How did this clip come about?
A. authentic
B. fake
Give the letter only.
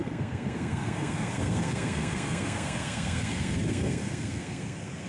B